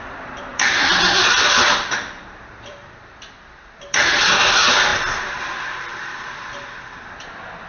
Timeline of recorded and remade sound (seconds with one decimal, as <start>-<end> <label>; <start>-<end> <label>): 0.0-4.9 remade; 4.9-5.4 recorded; 5.4-7.7 remade